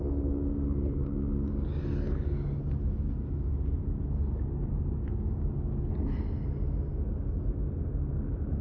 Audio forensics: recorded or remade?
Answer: recorded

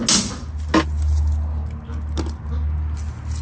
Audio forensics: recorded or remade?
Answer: recorded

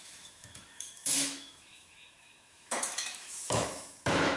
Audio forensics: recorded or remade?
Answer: remade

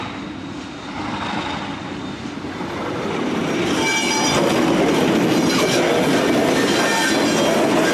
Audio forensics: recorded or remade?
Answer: recorded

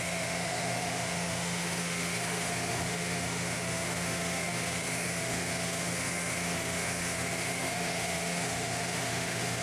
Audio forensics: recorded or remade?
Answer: remade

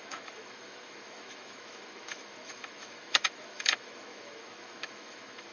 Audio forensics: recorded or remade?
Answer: remade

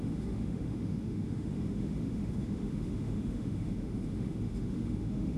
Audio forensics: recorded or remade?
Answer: remade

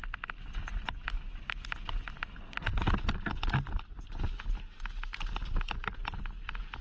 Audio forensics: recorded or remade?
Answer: recorded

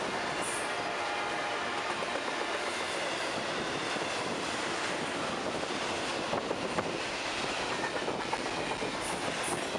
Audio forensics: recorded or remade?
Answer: recorded